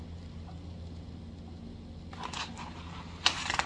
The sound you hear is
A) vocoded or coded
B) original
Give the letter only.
B